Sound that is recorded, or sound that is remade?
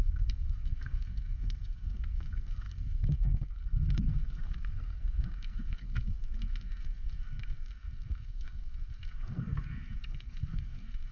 remade